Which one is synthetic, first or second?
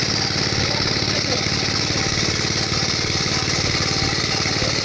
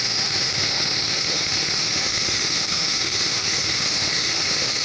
second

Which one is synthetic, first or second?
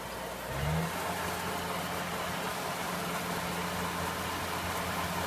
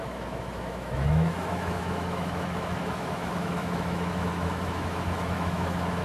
second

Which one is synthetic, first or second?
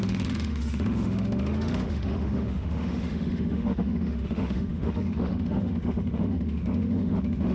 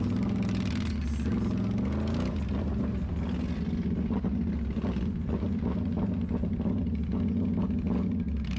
first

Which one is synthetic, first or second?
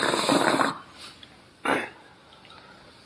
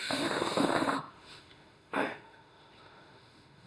second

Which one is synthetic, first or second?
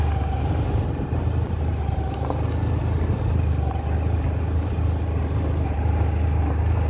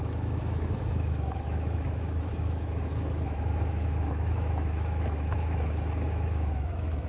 second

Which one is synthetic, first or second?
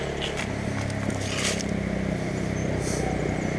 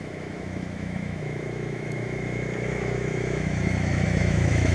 second